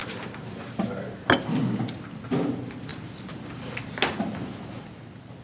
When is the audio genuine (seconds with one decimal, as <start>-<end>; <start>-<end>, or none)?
0.0-5.4